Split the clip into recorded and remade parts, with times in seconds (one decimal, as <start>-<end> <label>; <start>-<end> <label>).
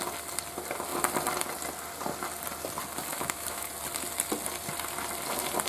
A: 0.0-3.1 recorded; 3.1-3.7 remade; 3.7-5.7 recorded